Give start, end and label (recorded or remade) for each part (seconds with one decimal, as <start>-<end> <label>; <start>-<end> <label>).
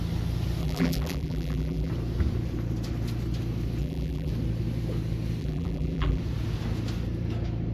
0.0-0.6 recorded; 0.6-1.9 remade; 1.9-3.8 recorded; 3.8-4.3 remade; 4.3-5.4 recorded; 5.4-6.2 remade; 6.2-7.7 recorded